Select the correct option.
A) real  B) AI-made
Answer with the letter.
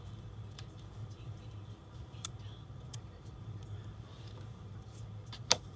B